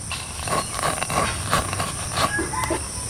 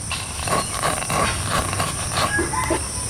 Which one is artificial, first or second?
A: first